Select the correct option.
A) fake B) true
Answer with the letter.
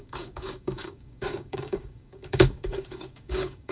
A